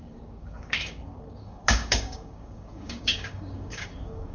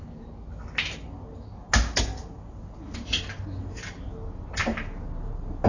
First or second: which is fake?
first